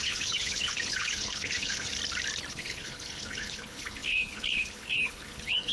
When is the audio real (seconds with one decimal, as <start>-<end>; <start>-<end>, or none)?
1.9-2.5